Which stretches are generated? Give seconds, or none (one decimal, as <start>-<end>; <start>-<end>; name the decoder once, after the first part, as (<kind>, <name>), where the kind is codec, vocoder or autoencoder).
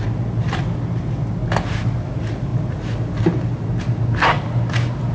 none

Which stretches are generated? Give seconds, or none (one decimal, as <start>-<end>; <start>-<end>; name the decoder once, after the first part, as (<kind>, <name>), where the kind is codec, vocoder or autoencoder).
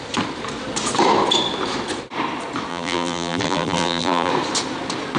2.7-4.3 (vocoder, BigVGAN v2)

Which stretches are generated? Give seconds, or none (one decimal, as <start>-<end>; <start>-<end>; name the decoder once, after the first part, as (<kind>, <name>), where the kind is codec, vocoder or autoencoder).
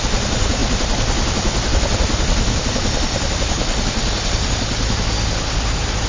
none